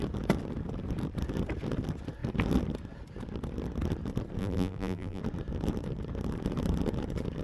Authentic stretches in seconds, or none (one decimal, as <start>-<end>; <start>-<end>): 0.0-4.4; 5.2-7.4